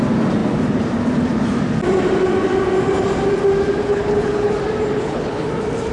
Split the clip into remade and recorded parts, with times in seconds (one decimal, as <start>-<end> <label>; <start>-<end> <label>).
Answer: 0.0-3.8 recorded; 3.8-4.5 remade; 4.5-4.9 recorded; 4.9-5.5 remade; 5.5-5.9 recorded